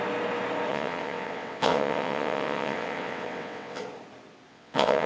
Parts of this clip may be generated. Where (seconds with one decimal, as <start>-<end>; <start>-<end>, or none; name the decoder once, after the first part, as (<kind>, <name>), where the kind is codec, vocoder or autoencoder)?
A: 0.7-3.8 (vocoder, WaveNeXt); 4.5-5.1